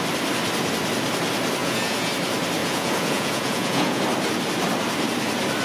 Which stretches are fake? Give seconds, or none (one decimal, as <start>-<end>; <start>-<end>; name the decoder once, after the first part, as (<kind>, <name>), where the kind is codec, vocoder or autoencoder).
1.6-2.1 (vocoder, Vocos); 2.6-4.0